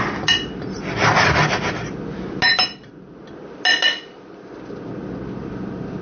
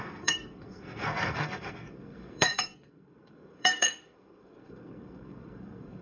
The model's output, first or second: second